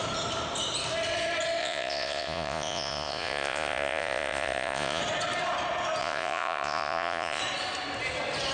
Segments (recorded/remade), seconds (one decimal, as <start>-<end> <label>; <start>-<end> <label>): 0.0-1.6 recorded; 1.6-5.0 remade; 5.0-6.0 recorded; 6.0-7.4 remade; 7.4-8.5 recorded